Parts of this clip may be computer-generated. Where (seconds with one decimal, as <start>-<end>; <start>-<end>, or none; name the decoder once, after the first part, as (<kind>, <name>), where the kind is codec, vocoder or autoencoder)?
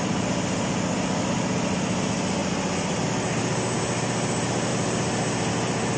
none